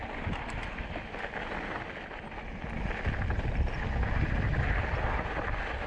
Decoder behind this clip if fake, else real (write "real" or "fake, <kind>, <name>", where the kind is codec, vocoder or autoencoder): real